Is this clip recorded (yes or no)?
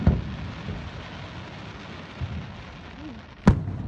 yes